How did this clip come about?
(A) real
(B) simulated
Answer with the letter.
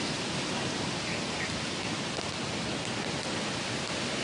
A